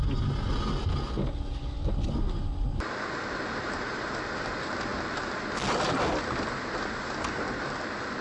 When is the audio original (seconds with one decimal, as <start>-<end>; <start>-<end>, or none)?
0.0-8.2